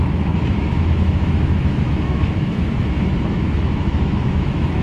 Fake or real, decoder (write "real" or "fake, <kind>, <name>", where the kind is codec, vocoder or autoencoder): fake, autoencoder, DAC-VAE